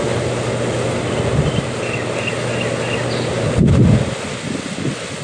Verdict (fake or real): real